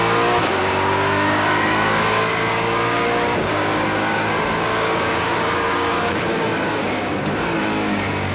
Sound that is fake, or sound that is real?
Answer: fake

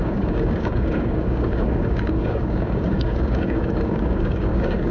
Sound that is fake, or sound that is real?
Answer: fake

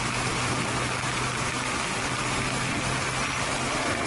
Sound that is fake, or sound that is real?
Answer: real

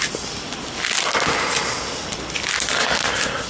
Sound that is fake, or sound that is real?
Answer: real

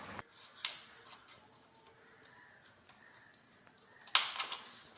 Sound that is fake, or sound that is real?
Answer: real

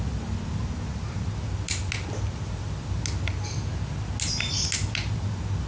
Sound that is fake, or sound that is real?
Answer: real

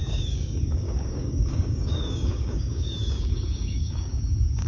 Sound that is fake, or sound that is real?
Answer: fake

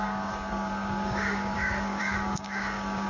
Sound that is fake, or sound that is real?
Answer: fake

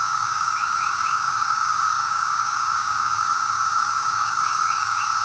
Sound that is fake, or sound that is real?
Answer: fake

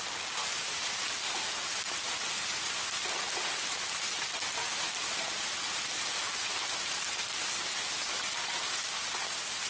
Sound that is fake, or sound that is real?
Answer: real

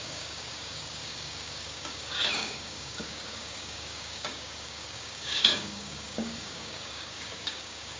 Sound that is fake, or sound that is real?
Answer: fake